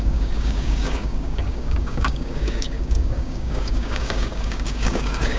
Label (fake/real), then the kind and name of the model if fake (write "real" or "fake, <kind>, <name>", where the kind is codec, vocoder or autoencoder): fake, codec, DAC